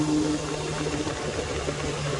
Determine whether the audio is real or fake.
real